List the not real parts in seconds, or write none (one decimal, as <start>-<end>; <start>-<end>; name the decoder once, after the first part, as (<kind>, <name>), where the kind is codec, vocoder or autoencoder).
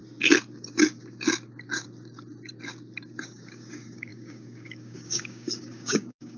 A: 3.2-6.4 (codec, DAC)